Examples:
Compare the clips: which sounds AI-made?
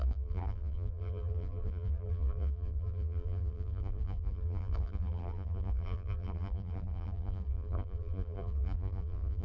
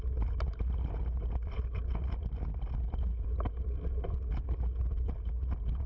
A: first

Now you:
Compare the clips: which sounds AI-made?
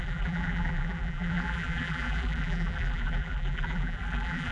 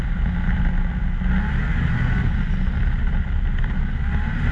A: first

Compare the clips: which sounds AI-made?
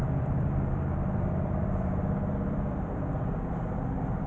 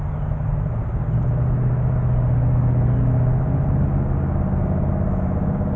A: first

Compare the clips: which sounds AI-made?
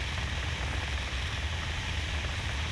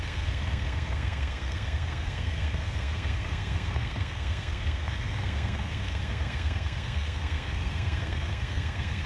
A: second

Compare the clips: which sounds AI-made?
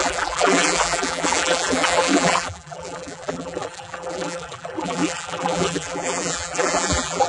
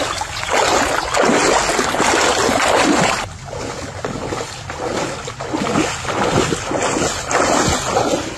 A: first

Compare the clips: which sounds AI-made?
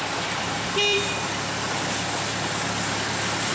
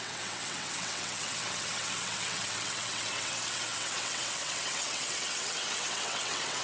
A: second